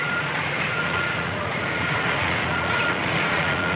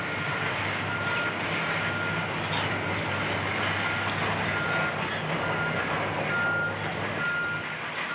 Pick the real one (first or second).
second